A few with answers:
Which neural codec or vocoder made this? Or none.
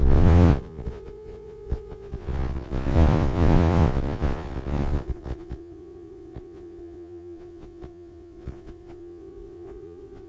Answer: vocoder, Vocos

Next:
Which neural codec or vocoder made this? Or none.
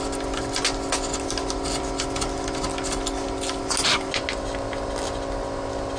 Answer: none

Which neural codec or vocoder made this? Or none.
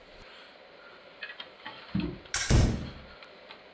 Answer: none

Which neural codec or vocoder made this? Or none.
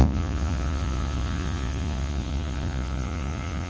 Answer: vocoder, Vocos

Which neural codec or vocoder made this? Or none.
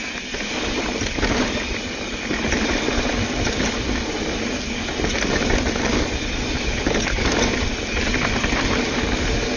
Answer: none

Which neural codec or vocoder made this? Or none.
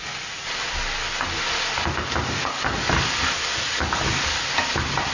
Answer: none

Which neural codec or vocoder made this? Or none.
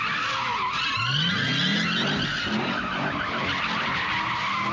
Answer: none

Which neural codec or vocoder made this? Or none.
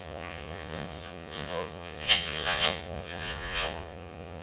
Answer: vocoder, Vocos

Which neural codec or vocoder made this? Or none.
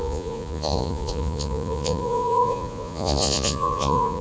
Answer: vocoder, Vocos